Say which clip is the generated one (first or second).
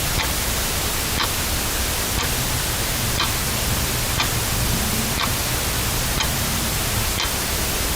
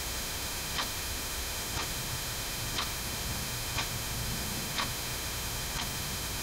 second